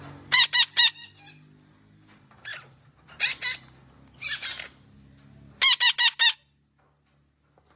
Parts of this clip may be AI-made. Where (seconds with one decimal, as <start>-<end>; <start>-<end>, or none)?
none